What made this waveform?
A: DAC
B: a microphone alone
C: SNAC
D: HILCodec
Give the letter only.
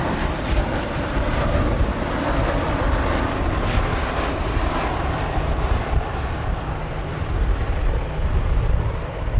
B